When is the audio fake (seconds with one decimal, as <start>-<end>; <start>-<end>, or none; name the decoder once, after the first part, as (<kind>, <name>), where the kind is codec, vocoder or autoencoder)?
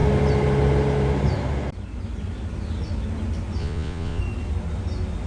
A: 3.6-4.2 (vocoder, Vocos)